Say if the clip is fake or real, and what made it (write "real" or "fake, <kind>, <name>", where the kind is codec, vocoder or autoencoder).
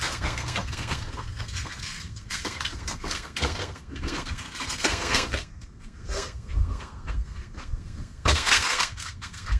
fake, codec, SNAC